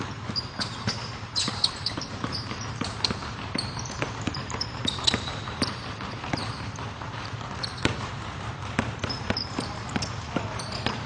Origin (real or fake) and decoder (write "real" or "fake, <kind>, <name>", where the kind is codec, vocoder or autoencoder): fake, vocoder, BigVGAN v2